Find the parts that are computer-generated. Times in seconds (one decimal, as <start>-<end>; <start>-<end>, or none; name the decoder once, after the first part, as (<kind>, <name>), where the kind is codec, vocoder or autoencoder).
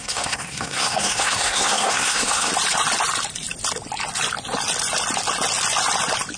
0.0-2.5 (codec, SNAC)